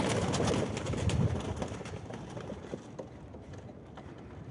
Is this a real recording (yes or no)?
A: yes